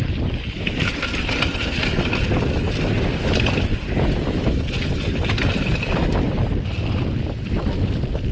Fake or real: real